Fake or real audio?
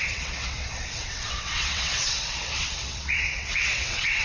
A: fake